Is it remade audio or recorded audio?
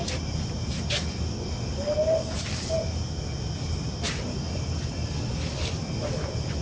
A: recorded